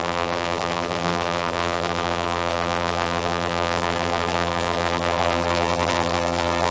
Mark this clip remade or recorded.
remade